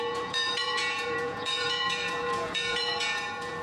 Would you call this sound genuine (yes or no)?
no